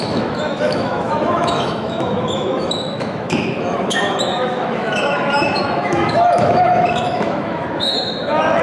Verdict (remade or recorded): remade